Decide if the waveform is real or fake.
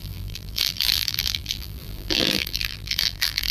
fake